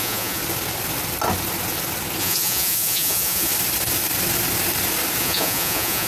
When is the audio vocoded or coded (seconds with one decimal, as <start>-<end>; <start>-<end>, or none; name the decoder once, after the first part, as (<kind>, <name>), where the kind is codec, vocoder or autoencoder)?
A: 0.0-0.4 (vocoder, Vocos); 2.2-3.5; 5.2-6.1